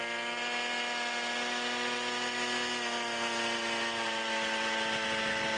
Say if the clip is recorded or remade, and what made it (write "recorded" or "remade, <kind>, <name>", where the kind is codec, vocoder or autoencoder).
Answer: recorded